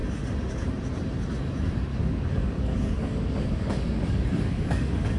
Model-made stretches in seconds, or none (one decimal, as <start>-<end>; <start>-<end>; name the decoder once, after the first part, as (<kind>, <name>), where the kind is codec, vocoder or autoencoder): 1.9-5.2 (codec, DAC)